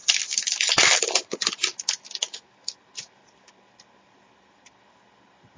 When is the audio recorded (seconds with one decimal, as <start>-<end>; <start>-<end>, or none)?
0.0-5.6